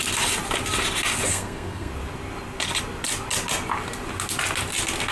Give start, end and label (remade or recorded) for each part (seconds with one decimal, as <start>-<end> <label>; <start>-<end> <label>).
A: 0.0-1.3 recorded; 1.3-1.9 remade; 1.9-5.1 recorded